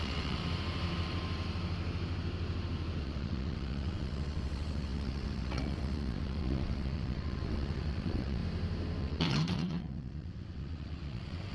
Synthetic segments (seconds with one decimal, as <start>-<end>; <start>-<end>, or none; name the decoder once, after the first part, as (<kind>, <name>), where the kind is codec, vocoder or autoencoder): 0.0-0.4 (vocoder, WaveNeXt); 3.0-8.4; 9.0-11.5